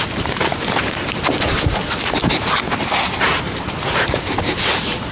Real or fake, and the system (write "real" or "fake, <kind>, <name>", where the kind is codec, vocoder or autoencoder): fake, vocoder, BigVGAN v2